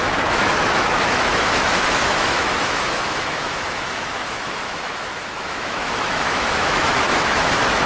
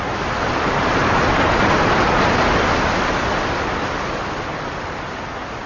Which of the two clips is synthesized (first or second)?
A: first